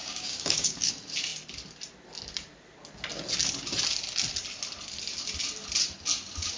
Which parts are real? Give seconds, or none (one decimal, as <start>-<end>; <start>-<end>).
0.9-6.6